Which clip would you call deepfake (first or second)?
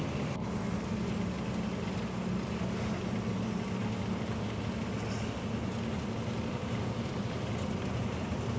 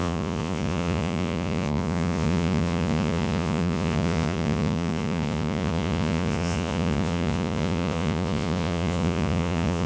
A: second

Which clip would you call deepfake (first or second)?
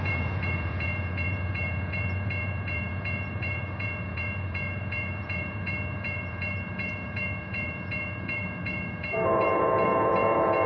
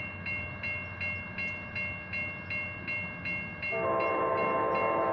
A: first